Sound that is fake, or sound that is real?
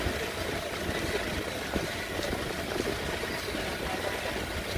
real